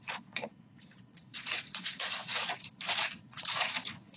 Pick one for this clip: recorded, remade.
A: remade